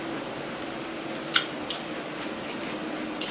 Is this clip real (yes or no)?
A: yes